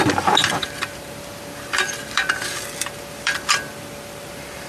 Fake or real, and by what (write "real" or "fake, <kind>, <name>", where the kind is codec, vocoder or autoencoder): fake, vocoder, BigVGAN v2